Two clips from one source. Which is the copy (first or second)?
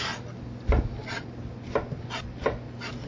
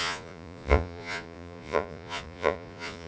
second